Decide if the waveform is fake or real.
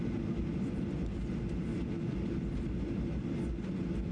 real